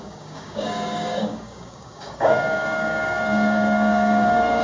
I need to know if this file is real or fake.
fake